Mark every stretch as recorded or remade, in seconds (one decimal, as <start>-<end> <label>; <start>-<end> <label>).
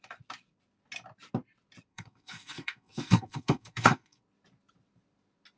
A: 0.0-1.9 recorded; 1.9-4.2 remade; 4.2-5.6 recorded